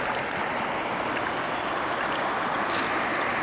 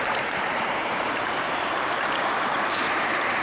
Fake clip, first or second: second